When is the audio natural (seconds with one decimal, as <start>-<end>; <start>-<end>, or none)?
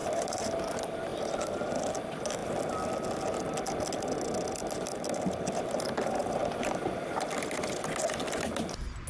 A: 0.6-1.1; 1.7-9.1